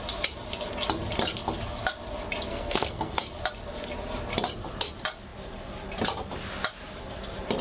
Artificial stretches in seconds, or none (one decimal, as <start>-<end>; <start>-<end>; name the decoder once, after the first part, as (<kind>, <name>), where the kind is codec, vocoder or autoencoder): 2.5-3.2 (codec, SNAC)